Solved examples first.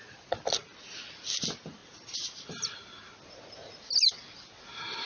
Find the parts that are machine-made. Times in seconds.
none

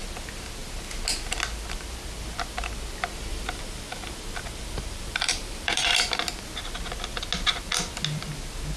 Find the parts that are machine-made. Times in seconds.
3.3-6.1

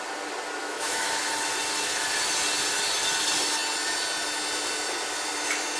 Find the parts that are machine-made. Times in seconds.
0.6-1.2